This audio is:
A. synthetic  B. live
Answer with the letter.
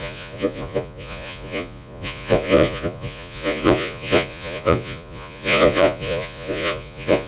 A